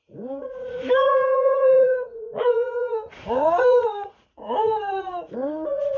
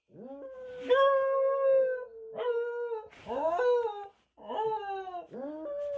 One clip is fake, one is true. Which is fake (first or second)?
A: first